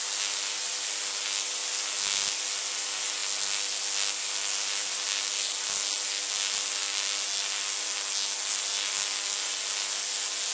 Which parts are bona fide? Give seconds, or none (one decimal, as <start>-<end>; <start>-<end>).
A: 0.0-10.5